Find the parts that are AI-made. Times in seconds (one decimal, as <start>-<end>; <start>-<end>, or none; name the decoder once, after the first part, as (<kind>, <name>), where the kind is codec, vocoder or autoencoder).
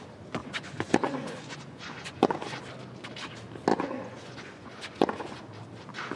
0.4-2.6 (vocoder, Vocos); 3.7-5.4